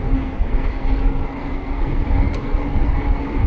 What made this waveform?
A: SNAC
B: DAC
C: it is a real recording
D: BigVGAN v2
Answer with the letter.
A